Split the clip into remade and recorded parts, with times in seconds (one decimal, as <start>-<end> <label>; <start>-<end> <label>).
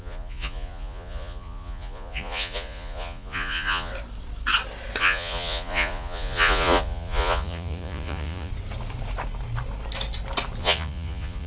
0.0-3.9 remade; 3.9-5.0 recorded; 5.0-8.5 remade; 8.5-10.6 recorded; 10.6-11.5 remade